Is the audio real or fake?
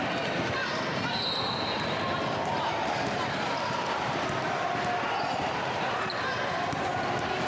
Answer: real